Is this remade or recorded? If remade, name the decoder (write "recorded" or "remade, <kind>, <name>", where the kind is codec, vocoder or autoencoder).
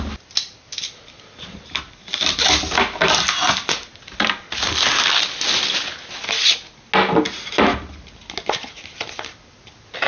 recorded